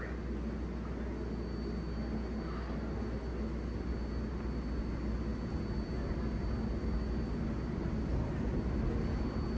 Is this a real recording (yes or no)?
yes